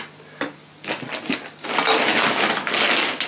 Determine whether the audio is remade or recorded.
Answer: recorded